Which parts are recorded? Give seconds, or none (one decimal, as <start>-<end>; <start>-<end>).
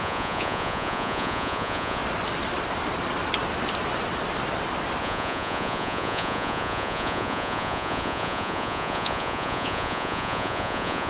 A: 2.0-5.0